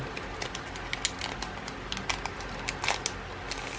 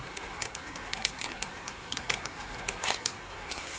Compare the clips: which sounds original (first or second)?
first